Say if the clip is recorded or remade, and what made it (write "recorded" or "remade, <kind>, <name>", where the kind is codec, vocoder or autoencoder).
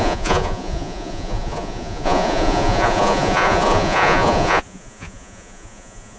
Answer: remade, vocoder, Vocos